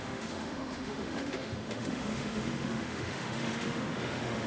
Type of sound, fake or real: fake